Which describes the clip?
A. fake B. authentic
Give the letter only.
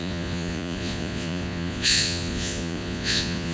A